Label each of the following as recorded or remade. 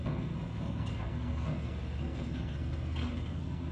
remade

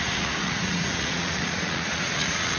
remade